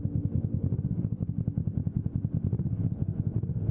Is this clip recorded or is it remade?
recorded